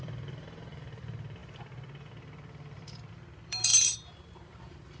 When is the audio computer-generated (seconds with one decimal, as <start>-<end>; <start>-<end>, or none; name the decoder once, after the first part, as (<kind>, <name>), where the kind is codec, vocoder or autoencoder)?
0.0-5.0 (vocoder, BigVGAN v2)